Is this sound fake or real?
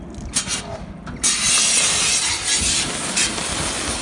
real